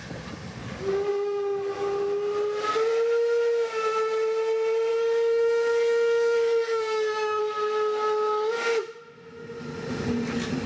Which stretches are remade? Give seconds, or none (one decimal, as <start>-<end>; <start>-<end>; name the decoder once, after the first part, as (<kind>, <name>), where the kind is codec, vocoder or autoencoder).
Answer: 0.6-1.9 (codec, DAC); 4.9-7.4